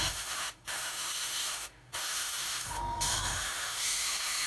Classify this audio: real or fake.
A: fake